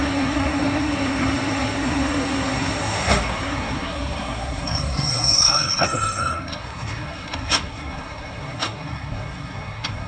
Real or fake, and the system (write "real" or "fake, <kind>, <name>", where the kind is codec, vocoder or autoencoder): fake, codec, SNAC